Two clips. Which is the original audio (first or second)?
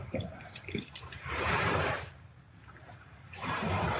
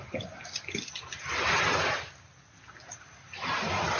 second